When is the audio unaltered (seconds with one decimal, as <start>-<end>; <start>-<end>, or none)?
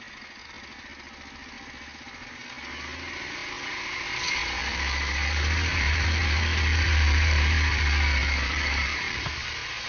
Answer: 0.0-4.6; 9.2-9.9